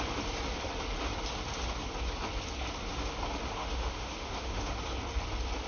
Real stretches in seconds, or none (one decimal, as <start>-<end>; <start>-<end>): 0.0-3.6; 4.7-5.7